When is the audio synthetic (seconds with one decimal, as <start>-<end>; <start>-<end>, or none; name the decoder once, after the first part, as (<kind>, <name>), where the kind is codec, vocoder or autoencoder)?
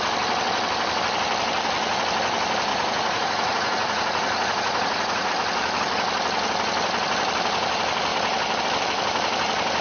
2.7-5.3 (vocoder, Vocos)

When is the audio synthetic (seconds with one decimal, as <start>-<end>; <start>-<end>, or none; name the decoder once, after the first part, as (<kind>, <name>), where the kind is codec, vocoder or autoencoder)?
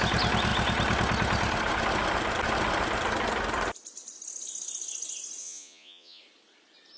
5.4-6.2 (vocoder, Vocos)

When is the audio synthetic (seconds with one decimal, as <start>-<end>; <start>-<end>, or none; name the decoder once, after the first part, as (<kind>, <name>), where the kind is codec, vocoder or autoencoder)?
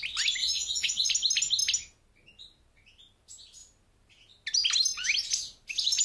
0.4-1.1 (vocoder, Vocos)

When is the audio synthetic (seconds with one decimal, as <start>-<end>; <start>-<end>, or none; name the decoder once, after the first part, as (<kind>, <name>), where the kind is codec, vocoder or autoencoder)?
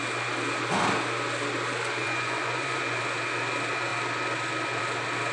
2.0-3.0 (vocoder, Vocos)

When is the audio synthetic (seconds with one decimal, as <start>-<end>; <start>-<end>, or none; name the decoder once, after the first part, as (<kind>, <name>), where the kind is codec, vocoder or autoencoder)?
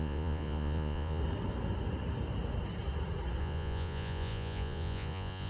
0.0-1.2 (vocoder, Vocos); 3.4-5.5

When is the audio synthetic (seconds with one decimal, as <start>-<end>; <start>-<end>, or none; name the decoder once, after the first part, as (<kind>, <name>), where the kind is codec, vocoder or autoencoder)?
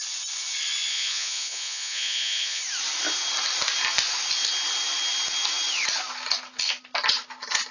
0.9-2.6 (vocoder, Vocos)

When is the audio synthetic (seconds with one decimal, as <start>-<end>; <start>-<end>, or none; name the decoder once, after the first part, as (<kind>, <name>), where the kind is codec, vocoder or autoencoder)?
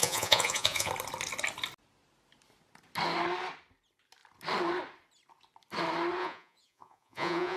0.0-0.9 (vocoder, Vocos); 6.2-7.6